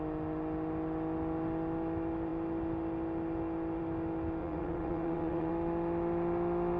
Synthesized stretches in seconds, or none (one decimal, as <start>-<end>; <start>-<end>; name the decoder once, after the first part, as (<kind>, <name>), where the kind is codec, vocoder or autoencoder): 4.4-5.5 (vocoder, WaveNeXt)